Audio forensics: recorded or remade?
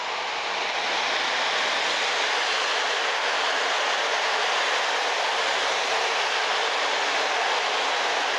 recorded